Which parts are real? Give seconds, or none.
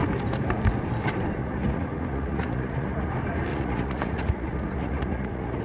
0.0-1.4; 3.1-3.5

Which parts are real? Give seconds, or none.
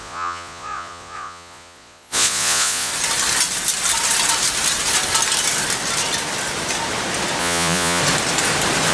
2.9-7.4; 8.0-8.9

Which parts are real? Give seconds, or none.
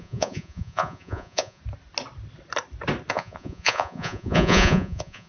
1.6-3.1